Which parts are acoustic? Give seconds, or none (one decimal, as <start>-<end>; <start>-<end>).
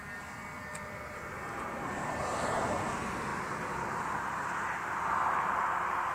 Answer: 0.0-6.1